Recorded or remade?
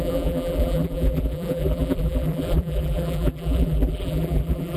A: remade